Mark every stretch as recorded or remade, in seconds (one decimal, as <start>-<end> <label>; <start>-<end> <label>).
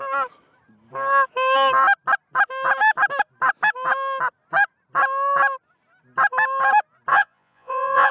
0.0-7.1 recorded; 7.1-8.1 remade